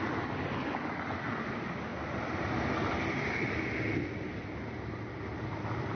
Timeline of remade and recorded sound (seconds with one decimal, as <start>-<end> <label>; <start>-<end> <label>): 0.0-5.9 recorded